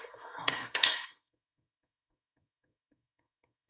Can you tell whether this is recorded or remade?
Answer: remade